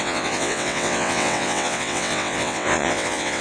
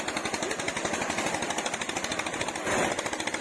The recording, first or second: second